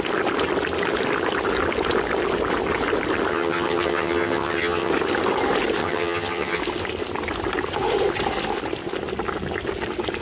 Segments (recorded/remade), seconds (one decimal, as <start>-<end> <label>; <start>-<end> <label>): 0.0-3.3 recorded; 3.3-4.9 remade; 4.9-5.8 recorded; 5.8-6.6 remade; 6.6-10.2 recorded